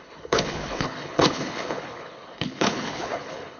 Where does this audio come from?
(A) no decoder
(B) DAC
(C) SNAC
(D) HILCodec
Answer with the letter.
D